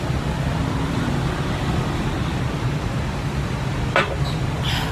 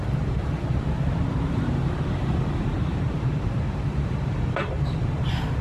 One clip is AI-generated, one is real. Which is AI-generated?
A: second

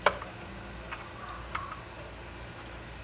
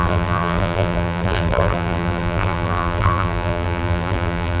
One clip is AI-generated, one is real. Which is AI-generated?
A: second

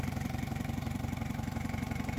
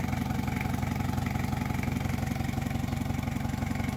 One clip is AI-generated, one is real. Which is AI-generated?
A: first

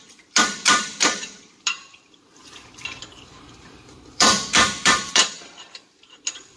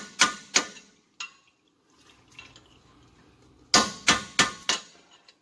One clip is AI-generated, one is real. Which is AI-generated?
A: first